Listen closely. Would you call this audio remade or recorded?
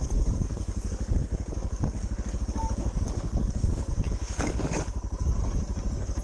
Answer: remade